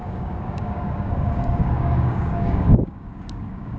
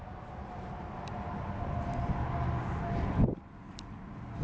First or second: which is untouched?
second